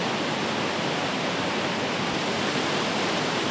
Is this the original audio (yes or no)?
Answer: yes